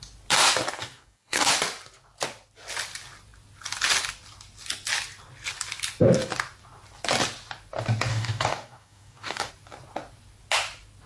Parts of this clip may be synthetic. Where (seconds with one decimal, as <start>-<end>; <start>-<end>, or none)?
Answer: 0.8-1.5; 8.1-9.5